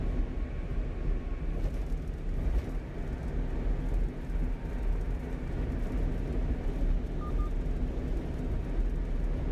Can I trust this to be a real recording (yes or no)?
yes